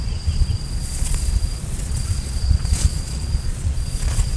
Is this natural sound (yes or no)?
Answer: no